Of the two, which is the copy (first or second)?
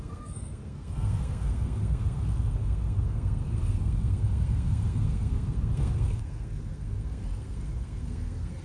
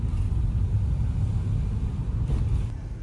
first